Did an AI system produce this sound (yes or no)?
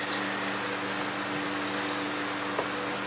no